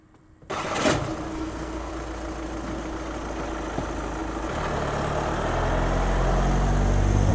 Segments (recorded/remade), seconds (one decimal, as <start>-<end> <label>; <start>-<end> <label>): 0.0-1.3 recorded; 1.3-1.9 remade; 1.9-7.3 recorded